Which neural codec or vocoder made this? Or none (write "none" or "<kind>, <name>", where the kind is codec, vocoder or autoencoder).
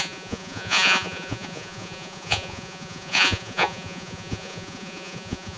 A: vocoder, Vocos